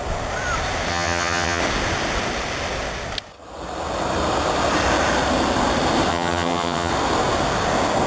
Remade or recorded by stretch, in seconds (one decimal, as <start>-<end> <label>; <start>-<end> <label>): 0.0-0.9 recorded; 0.9-1.6 remade; 1.6-6.1 recorded; 6.1-6.9 remade; 6.9-8.1 recorded